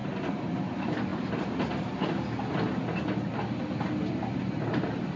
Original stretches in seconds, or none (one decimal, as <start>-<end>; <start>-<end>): 0.0-5.2